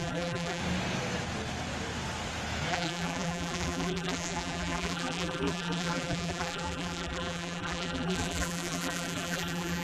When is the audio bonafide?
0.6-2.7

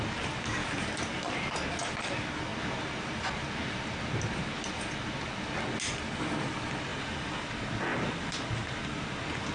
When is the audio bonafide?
0.0-0.6; 1.5-6.9; 7.5-7.9; 8.9-9.5

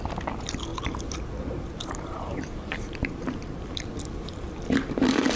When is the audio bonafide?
0.0-0.7; 3.9-5.4

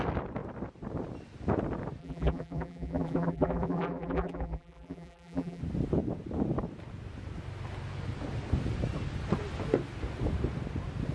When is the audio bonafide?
0.0-2.0; 5.6-11.1

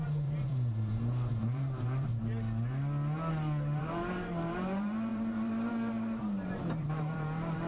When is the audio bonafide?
2.1-3.8

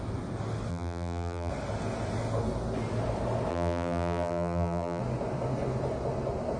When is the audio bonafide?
0.0-0.7; 1.5-3.5; 5.0-6.6

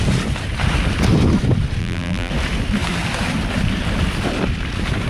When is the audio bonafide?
0.0-1.8; 2.3-5.1

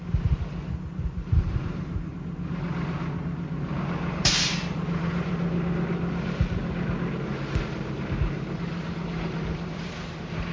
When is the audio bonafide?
2.1-4.1; 5.3-7.7